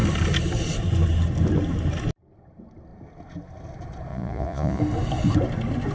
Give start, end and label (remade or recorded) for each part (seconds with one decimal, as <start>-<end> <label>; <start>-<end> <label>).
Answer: 0.0-4.1 recorded; 4.1-4.8 remade; 4.8-5.9 recorded